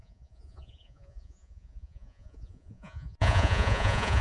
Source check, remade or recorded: remade